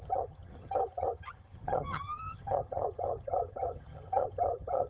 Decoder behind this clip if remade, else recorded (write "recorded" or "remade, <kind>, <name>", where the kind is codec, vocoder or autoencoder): remade, vocoder, HiFi-GAN